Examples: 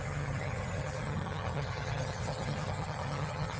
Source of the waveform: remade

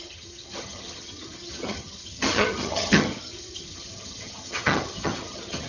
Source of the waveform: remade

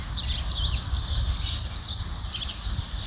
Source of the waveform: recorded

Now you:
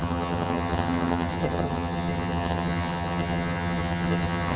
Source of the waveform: remade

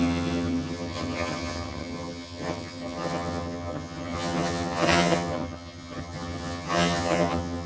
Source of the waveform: remade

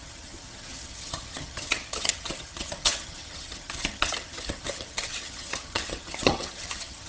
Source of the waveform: remade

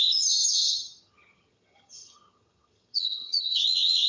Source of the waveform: remade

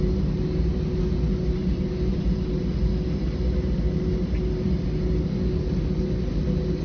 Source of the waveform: recorded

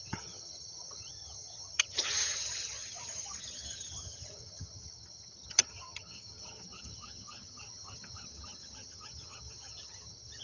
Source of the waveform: remade